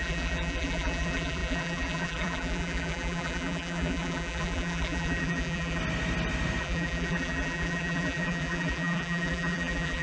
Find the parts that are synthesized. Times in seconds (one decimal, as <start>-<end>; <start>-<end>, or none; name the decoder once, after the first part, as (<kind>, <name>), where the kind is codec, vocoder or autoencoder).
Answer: 0.0-5.8 (vocoder, BigVGAN v2); 6.6-10.0